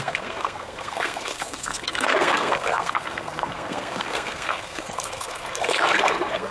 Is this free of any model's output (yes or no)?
no